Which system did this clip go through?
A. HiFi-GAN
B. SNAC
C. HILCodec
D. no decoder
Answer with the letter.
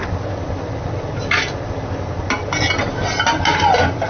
D